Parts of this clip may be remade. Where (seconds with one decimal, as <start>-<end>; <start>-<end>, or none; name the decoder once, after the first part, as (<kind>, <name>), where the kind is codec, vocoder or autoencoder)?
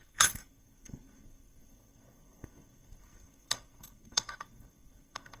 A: 0.0-5.4 (codec, SNAC)